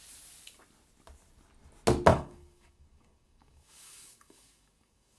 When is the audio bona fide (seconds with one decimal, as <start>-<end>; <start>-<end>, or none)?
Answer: 0.0-2.1